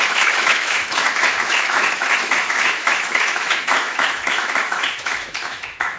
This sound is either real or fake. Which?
fake